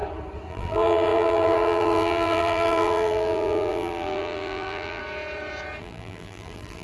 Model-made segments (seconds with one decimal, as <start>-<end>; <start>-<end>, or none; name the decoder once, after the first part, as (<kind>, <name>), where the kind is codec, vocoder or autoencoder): 0.5-5.0 (vocoder, BigVGAN v2); 5.8-6.8